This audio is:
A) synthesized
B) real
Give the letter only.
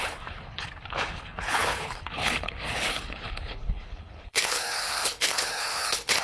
A